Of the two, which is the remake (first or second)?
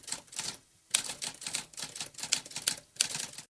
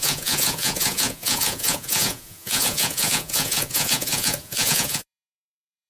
second